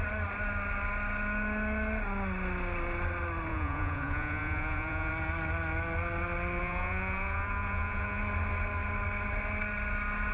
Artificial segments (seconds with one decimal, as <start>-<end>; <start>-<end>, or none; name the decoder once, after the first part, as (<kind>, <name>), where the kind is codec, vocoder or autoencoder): 3.5-5.1 (vocoder, Vocos); 6.6-8.2